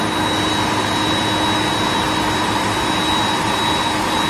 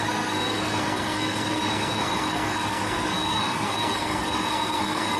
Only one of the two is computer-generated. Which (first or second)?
second